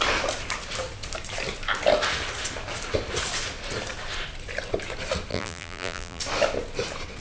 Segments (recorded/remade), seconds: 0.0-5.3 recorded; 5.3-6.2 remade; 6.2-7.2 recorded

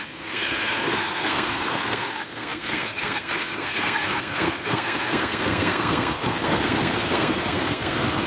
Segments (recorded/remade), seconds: 0.0-8.3 remade

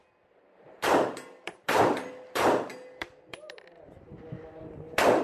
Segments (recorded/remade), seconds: 0.0-5.2 remade

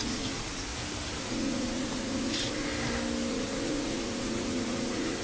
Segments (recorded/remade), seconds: 0.0-0.7 remade; 0.7-1.3 recorded; 1.3-2.7 remade; 2.7-3.3 recorded; 3.3-5.2 remade

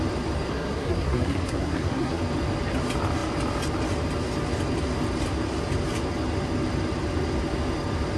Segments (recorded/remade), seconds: 0.0-0.5 recorded; 0.5-2.2 remade; 2.2-8.2 recorded

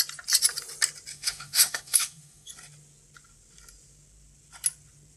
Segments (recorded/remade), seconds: 0.0-1.1 recorded; 1.1-2.5 remade; 2.5-5.2 recorded

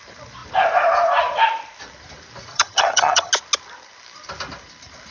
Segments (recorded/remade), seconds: 0.0-2.5 recorded; 2.5-3.3 remade; 3.3-5.1 recorded

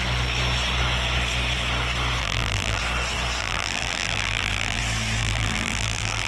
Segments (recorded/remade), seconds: 0.0-2.2 recorded; 2.2-2.8 remade; 2.8-3.4 recorded; 3.4-4.8 remade; 4.8-5.2 recorded; 5.2-6.3 remade